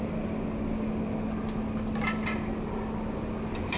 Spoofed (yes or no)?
no